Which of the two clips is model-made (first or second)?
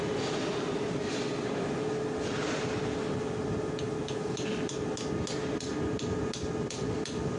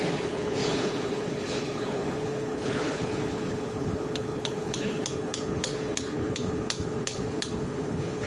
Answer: second